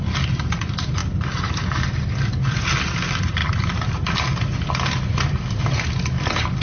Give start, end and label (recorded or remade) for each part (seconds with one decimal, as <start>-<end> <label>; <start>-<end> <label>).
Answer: 0.0-6.6 recorded